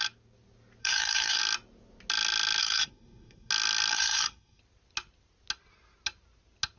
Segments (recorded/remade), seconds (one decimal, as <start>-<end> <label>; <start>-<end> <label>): 0.0-0.8 recorded; 0.8-1.4 remade; 1.4-2.6 recorded; 2.6-3.5 remade; 3.5-3.9 recorded; 3.9-4.6 remade; 4.6-6.8 recorded